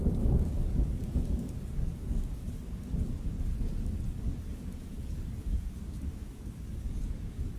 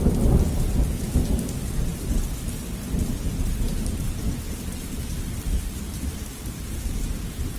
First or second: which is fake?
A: first